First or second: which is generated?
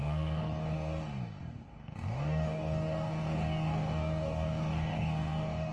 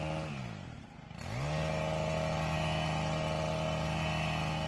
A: first